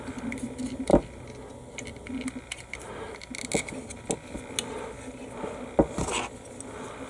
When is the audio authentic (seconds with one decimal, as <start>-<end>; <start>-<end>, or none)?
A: 0.0-7.1